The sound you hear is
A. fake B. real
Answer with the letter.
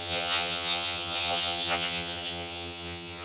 A